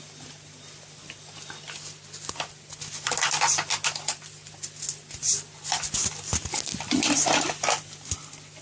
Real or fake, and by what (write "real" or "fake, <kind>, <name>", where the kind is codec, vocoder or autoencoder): real